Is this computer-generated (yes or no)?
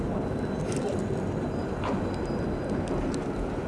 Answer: no